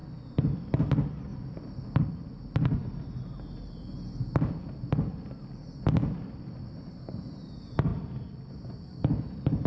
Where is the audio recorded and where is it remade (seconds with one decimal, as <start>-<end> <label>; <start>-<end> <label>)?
0.0-9.7 recorded